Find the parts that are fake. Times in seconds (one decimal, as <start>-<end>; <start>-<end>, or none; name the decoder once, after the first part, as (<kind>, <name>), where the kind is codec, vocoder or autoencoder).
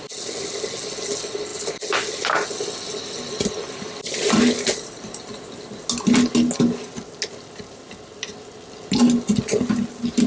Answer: none